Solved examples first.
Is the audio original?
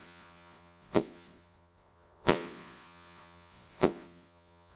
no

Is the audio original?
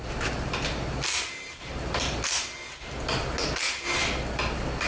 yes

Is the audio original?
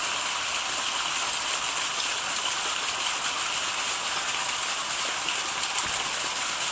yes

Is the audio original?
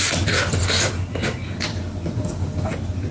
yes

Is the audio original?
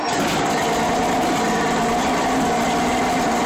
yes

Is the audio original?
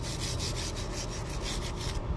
yes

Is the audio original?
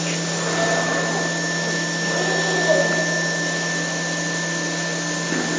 yes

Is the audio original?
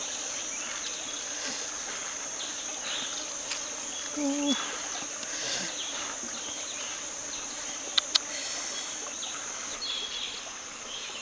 yes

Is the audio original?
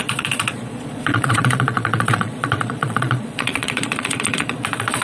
no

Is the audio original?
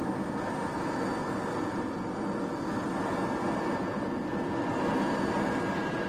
yes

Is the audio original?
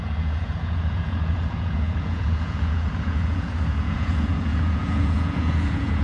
no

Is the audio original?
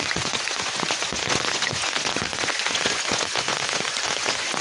no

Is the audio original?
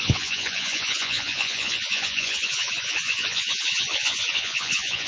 no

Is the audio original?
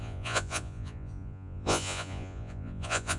no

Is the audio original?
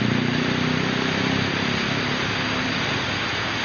yes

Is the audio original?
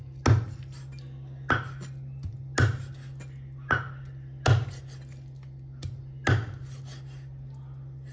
yes